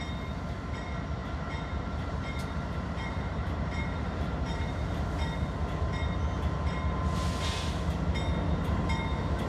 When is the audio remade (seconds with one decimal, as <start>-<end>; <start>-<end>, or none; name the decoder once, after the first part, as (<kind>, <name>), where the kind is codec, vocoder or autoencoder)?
1.2-4.7 (vocoder, BigVGAN v2)